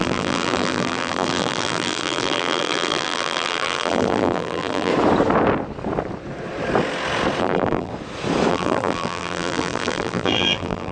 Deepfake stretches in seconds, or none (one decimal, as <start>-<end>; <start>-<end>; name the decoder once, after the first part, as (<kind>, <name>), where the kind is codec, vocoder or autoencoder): 0.0-4.9 (vocoder, BigVGAN v2); 7.4-7.9; 8.5-10.9